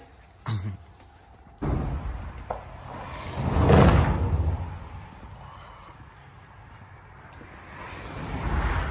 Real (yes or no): yes